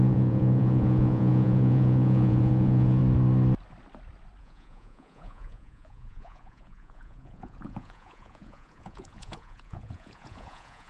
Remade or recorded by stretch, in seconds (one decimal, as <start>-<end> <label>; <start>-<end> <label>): 0.0-3.0 remade; 3.0-4.4 recorded; 4.4-10.9 remade